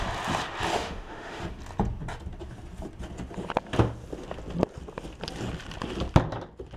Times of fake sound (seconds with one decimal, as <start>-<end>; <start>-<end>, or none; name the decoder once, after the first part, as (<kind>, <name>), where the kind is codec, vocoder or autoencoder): 0.7-1.4 (autoencoder, DAC-VAE)